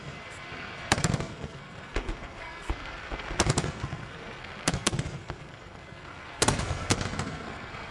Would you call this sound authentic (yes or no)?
no